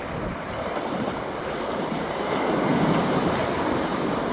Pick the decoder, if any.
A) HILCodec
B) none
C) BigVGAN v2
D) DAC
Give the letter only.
C